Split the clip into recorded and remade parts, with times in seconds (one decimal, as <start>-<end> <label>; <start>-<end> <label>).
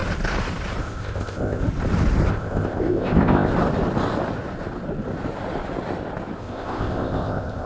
0.0-0.8 recorded; 0.8-1.6 remade; 1.6-2.3 recorded; 2.3-3.5 remade; 3.5-6.4 recorded; 6.4-7.7 remade